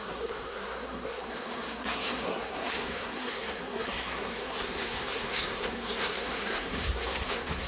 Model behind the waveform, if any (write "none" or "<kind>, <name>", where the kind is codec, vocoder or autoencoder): codec, SNAC